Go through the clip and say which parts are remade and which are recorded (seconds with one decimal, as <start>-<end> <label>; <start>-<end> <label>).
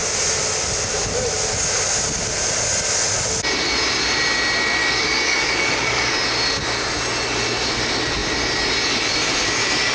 0.0-4.8 recorded; 4.8-6.1 remade; 6.1-9.9 recorded